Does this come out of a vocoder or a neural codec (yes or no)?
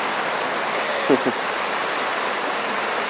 no